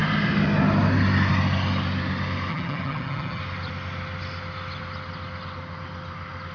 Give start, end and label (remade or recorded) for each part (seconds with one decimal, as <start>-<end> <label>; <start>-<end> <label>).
0.0-2.5 recorded; 2.5-3.4 remade; 3.4-6.5 recorded